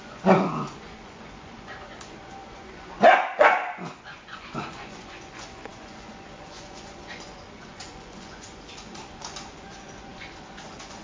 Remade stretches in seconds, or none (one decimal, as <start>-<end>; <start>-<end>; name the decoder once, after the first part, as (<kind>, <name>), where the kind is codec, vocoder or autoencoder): 0.0-11.0 (vocoder, Vocos)